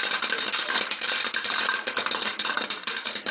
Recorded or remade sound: remade